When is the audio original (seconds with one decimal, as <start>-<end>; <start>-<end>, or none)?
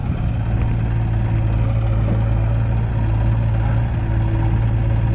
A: 0.0-5.1